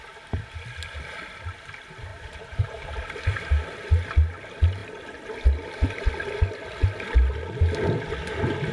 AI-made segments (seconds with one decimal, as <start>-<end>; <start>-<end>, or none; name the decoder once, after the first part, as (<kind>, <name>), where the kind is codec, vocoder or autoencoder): 2.1-2.8 (vocoder, BigVGAN v2)